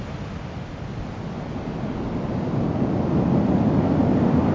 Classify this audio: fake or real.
real